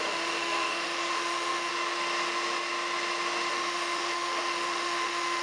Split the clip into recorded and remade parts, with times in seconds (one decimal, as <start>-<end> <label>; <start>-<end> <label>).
0.0-1.7 remade; 1.7-3.5 recorded; 3.5-5.4 remade